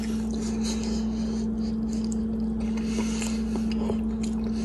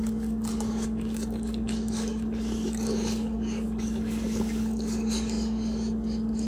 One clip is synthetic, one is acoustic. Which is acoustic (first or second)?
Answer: first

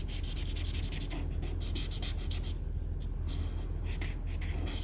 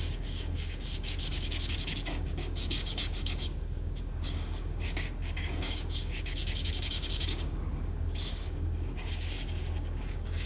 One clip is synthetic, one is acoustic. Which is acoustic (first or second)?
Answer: first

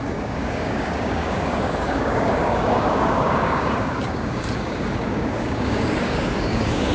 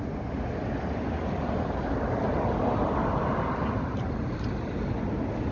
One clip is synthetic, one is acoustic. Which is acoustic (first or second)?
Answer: second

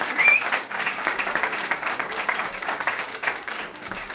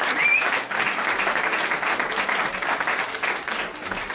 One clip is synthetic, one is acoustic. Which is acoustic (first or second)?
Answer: second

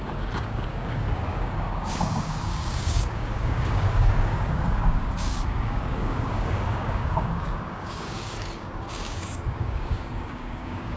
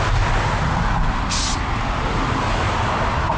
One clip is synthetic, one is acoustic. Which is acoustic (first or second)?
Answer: second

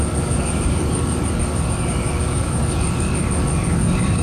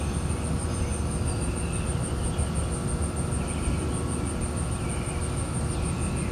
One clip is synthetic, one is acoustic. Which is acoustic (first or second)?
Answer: second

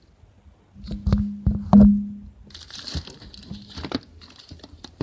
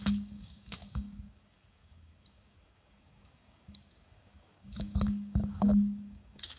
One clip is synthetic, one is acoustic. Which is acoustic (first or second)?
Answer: first